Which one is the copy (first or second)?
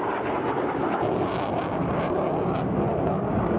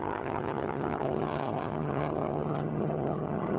second